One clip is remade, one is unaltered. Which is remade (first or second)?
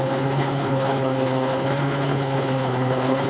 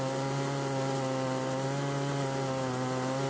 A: first